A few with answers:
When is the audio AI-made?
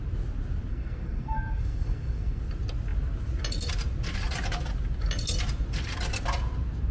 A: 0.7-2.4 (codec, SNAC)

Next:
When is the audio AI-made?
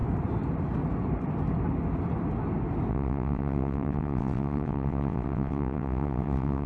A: 2.9-6.7 (vocoder, WaveNeXt)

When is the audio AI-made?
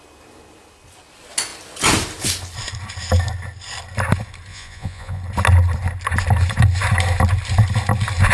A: 4.5-5.2 (vocoder, Vocos)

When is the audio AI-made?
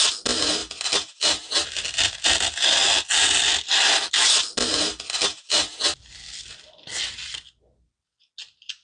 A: none